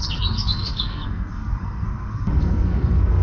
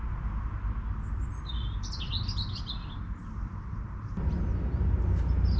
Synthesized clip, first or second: first